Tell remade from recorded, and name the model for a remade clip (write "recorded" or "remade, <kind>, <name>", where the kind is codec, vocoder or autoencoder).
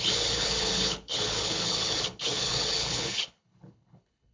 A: remade, codec, HILCodec